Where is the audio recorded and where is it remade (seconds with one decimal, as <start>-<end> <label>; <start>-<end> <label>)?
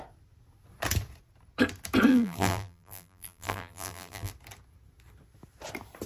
0.0-2.1 recorded; 2.1-4.3 remade; 4.3-6.1 recorded